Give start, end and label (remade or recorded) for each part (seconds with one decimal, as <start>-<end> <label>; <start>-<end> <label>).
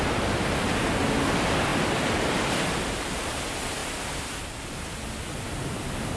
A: 0.0-1.7 recorded; 1.7-3.4 remade; 3.4-6.2 recorded